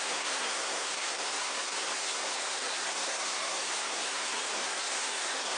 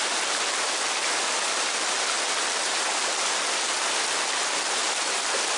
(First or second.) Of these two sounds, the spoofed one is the first